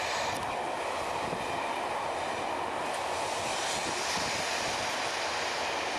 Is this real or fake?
real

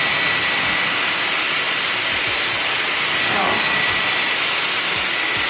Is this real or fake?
real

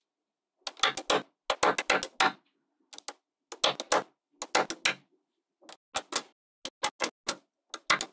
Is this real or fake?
real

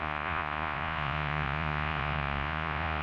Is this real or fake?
fake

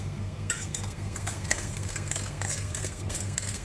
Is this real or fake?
fake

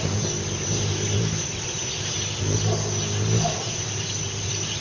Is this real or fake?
real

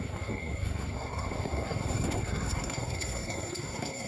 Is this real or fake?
fake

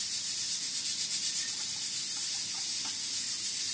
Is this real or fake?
real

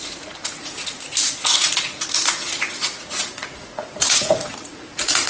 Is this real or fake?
fake